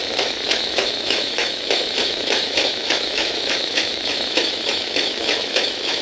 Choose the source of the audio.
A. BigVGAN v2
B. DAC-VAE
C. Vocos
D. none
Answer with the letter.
B